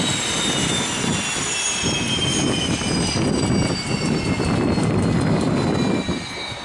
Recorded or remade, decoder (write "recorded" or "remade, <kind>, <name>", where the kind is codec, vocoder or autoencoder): recorded